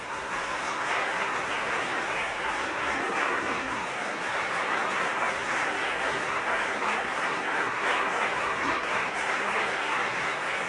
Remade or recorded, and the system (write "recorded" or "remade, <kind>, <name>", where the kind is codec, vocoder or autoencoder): remade, codec, SNAC